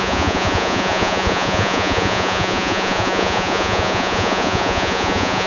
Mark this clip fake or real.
fake